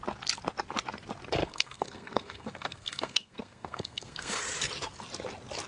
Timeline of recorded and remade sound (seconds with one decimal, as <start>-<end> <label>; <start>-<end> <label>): 0.0-1.4 recorded; 1.4-4.4 remade; 4.4-5.7 recorded